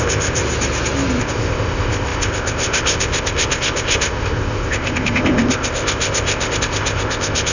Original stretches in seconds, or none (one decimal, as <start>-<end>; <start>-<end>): 0.4-1.2